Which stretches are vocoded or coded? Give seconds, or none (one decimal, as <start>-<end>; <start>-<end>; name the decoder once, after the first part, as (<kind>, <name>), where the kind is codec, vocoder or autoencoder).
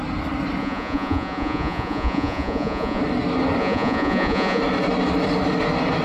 0.6-3.0 (vocoder, Vocos); 3.6-4.6